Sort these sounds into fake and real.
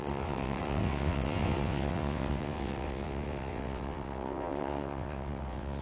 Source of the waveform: fake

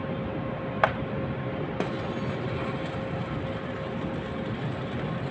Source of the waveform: real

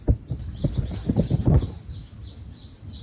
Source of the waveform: real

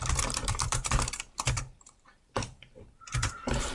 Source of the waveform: fake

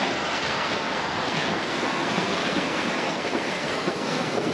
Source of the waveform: fake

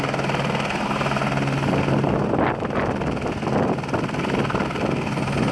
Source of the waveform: real